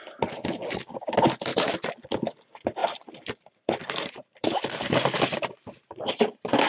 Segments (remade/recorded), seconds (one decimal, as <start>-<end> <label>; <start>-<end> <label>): 0.0-1.5 recorded; 1.5-2.0 remade; 2.0-2.8 recorded; 2.8-6.1 remade; 6.1-6.7 recorded

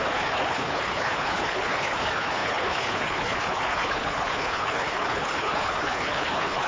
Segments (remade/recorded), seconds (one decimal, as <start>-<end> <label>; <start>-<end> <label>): 0.0-6.7 remade